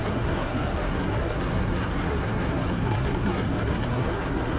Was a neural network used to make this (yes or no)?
yes